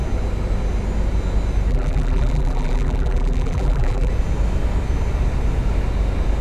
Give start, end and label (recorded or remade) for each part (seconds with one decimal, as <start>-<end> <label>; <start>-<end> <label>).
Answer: 0.0-1.7 recorded; 1.7-4.1 remade; 4.1-6.4 recorded